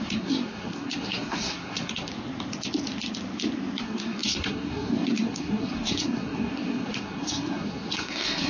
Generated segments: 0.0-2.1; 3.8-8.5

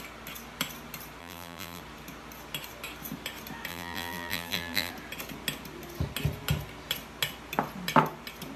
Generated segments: 1.2-1.8; 3.7-4.9

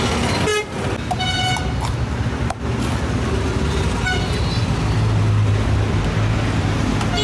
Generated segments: none

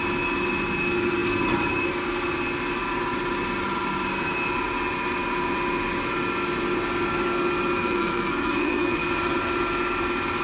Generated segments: 7.8-9.1

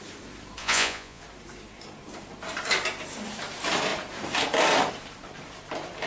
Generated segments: 0.6-1.2

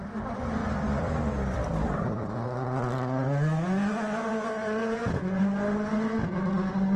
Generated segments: 4.8-5.4

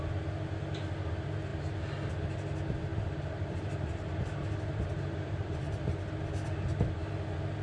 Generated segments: 2.9-6.1

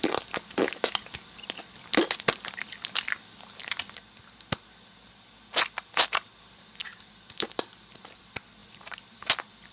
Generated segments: 6.8-8.2; 8.6-9.7